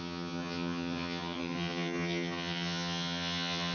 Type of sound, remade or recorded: remade